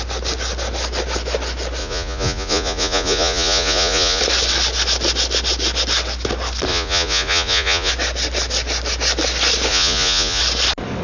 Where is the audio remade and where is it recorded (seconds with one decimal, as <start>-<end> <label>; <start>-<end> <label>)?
0.0-1.8 recorded; 1.8-4.2 remade; 4.2-6.7 recorded; 6.7-7.9 remade; 7.9-9.7 recorded; 9.7-10.4 remade; 10.4-11.0 recorded